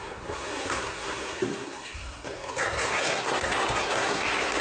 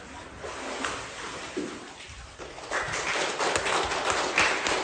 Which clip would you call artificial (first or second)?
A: first